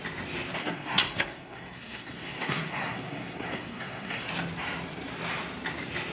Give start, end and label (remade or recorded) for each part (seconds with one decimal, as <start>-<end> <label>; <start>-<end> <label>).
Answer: 0.0-0.6 recorded; 0.6-4.3 remade; 4.3-6.1 recorded